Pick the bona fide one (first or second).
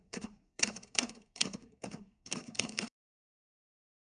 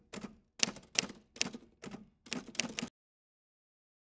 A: second